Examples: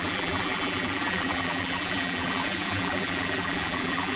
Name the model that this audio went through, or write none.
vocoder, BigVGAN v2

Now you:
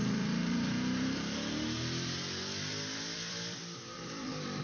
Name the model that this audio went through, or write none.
vocoder, BigVGAN v2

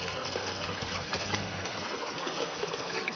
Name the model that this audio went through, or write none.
codec, SNAC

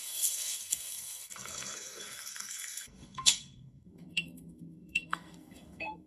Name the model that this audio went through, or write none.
codec, SNAC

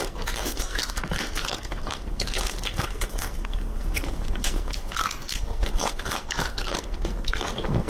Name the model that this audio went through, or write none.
codec, SNAC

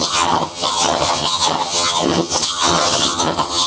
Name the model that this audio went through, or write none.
vocoder, HiFi-GAN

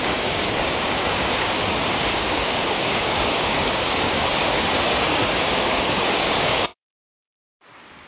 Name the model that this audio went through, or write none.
codec, DAC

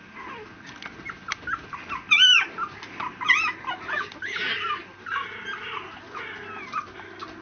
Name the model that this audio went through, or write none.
none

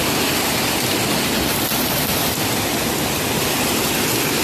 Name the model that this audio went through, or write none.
none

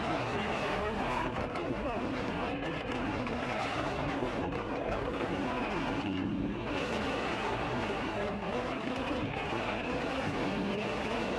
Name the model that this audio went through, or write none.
codec, SNAC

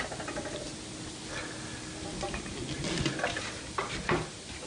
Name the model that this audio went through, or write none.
none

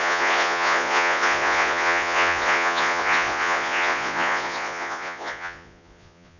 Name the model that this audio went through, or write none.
vocoder, Vocos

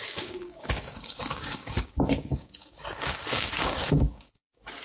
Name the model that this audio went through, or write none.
codec, DAC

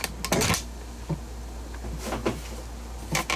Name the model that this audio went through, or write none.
none